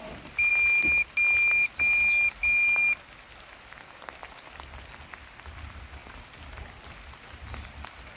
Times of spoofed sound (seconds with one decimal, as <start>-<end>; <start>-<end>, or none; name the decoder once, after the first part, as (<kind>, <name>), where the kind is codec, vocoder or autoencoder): none